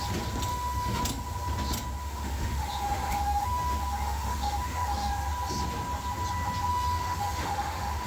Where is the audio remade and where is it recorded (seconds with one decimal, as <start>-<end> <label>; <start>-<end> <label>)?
0.0-0.5 recorded; 0.5-1.0 remade; 1.0-2.0 recorded; 2.0-5.1 remade; 5.1-6.7 recorded; 6.7-8.1 remade